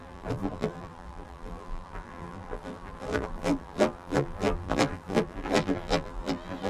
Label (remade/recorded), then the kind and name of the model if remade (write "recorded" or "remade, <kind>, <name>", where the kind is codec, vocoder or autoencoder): remade, vocoder, BigVGAN v2